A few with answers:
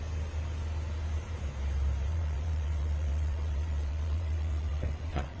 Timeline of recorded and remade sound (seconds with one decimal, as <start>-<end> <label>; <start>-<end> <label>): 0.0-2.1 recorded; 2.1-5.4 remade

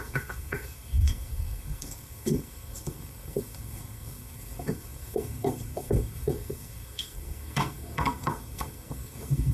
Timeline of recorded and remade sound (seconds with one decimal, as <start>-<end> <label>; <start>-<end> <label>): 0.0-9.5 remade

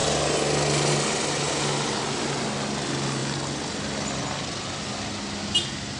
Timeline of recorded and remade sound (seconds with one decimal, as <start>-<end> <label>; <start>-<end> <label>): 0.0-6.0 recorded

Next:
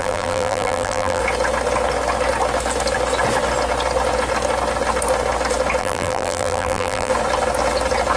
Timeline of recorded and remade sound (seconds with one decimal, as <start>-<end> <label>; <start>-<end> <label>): 0.0-1.2 remade; 1.2-5.8 recorded; 5.8-7.1 remade; 7.1-8.2 recorded

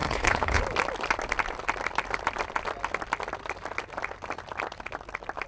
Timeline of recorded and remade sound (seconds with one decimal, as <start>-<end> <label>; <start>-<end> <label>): 0.0-0.6 remade; 0.6-5.5 recorded